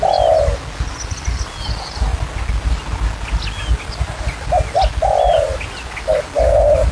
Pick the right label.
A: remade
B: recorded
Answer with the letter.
B